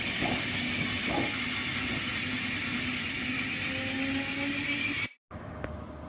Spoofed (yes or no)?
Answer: no